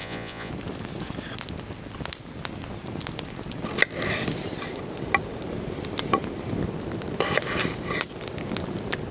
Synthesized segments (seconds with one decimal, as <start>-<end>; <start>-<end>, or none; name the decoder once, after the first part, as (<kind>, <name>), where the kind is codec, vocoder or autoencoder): 0.0-0.5 (vocoder, Vocos)